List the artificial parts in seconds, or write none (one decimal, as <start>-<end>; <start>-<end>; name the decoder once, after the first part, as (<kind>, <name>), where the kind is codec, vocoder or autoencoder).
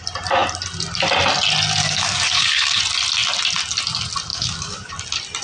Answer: 1.8-2.8 (codec, DAC); 4.3-4.9